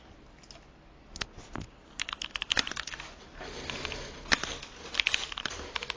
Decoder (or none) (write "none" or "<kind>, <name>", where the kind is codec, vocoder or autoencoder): none